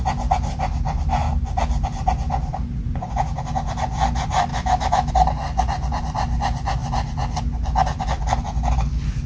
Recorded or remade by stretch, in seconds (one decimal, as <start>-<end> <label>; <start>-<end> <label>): 0.0-4.5 recorded; 4.5-5.1 remade; 5.1-9.3 recorded